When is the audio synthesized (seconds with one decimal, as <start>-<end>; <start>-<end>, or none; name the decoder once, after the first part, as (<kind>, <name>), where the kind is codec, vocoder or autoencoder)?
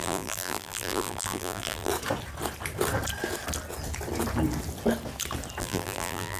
0.0-1.9 (vocoder, BigVGAN v2); 5.6-6.4